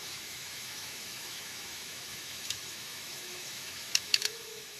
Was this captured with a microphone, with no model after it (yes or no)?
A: no